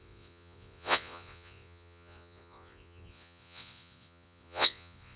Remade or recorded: remade